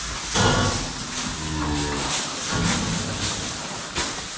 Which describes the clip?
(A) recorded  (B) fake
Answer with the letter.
A